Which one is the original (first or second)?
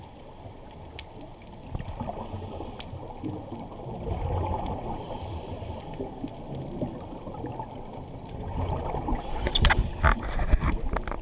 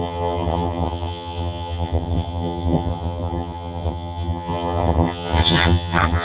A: first